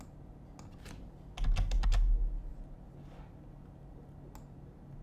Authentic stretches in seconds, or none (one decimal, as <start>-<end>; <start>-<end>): 0.0-5.0